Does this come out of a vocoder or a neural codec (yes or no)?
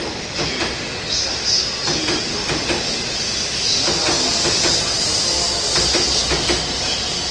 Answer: no